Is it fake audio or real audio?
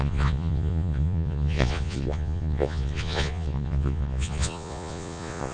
fake